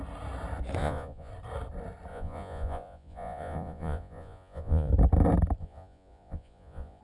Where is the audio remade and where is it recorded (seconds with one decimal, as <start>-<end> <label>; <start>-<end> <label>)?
0.0-0.8 recorded; 0.8-1.3 remade; 1.3-2.1 recorded; 2.1-4.9 remade; 4.9-5.6 recorded; 5.6-7.0 remade